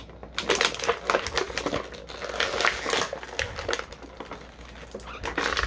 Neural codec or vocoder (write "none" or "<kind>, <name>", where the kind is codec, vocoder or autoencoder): none